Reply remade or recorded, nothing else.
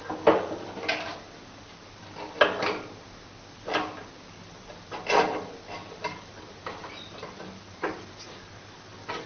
recorded